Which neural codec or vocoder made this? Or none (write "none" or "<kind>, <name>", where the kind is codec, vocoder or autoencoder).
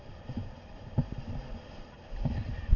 none